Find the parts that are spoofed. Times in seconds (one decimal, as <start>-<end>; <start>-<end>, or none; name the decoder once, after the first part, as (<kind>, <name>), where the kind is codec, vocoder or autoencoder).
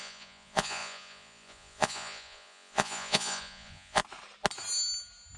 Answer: 0.0-4.0 (vocoder, Vocos)